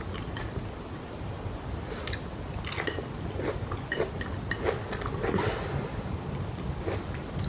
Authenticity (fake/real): real